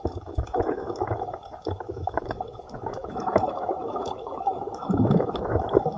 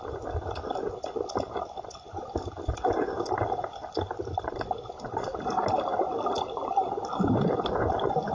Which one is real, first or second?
second